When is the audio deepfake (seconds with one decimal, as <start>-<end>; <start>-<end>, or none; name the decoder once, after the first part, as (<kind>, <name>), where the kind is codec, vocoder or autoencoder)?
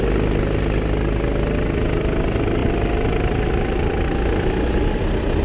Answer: none